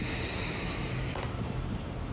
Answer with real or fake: real